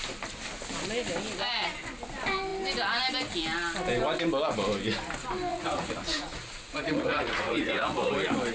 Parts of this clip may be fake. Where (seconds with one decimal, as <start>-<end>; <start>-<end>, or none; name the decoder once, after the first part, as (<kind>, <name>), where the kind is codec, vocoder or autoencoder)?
5.5-8.1 (vocoder, Vocos)